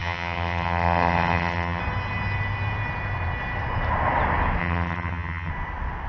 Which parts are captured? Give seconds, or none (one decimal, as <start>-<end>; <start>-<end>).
1.8-4.6; 5.5-6.1